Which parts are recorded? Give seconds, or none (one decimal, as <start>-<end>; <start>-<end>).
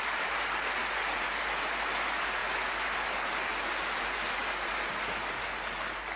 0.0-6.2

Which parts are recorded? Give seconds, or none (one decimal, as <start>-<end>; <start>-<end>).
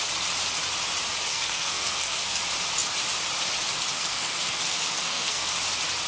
0.0-1.3; 2.4-3.9; 5.5-6.1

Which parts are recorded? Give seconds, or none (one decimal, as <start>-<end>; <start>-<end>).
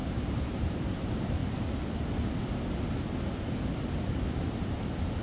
1.4-3.7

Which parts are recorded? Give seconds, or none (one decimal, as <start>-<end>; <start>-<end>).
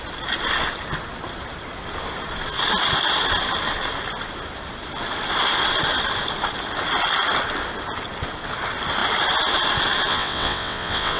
0.0-10.1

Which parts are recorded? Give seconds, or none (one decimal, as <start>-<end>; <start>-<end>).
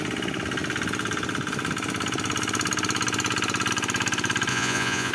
0.0-4.5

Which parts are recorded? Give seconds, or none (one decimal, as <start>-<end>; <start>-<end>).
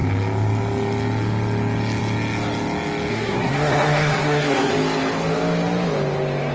0.0-3.1; 4.7-6.5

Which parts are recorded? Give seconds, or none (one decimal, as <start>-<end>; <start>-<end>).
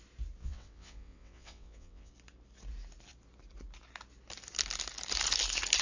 0.0-0.4; 2.1-5.8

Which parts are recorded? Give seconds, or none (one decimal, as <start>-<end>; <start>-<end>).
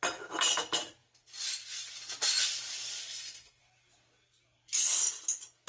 0.0-3.0; 3.6-5.7